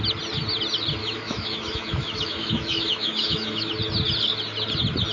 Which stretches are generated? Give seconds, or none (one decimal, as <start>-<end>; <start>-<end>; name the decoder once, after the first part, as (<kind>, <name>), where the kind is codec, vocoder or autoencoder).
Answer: 1.0-3.7 (autoencoder, DAC-VAE)